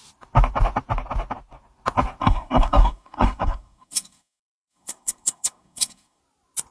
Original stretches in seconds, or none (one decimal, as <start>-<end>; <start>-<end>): 0.0-2.2; 6.2-6.7